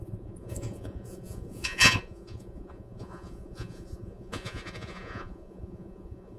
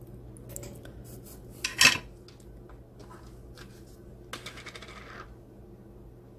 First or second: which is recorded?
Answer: second